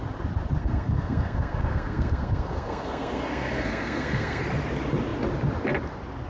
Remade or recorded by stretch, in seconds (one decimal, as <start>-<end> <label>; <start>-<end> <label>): 0.0-0.6 recorded; 0.6-4.4 remade; 4.4-6.3 recorded